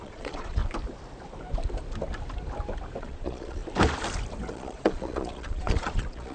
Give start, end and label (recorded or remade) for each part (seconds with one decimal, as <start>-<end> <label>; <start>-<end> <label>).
0.0-0.6 remade; 0.6-3.0 recorded; 3.0-3.6 remade; 3.6-4.5 recorded; 4.5-6.3 remade